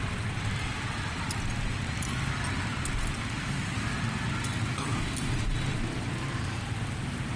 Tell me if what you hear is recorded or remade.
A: recorded